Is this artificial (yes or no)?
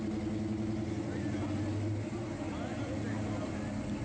no